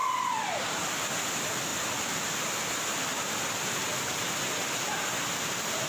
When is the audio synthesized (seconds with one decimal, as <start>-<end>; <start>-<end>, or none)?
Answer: none